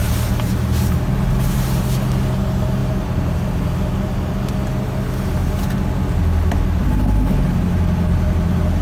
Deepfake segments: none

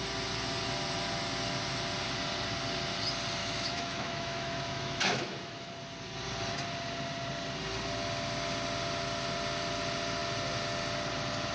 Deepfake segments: 3.4-5.7 (autoencoder, DAC-VAE)

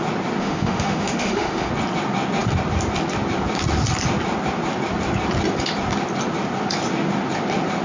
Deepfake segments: 0.4-1.7 (autoencoder, DAC-VAE)

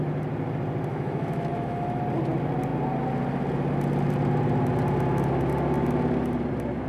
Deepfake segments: 0.9-2.0 (autoencoder, DAC-VAE)

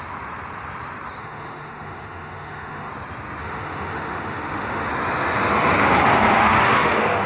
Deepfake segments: 1.2-2.9 (autoencoder, DAC-VAE); 3.4-4.9; 6.3-7.3

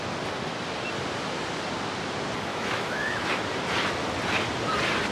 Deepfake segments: 2.5-3.3 (autoencoder, DAC-VAE)

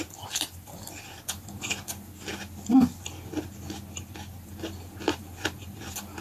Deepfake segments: none